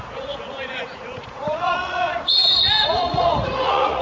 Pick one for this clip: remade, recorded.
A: remade